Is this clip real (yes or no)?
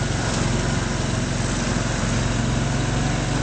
yes